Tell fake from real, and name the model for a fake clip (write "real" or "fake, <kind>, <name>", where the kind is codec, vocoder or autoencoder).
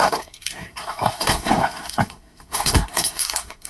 fake, codec, SNAC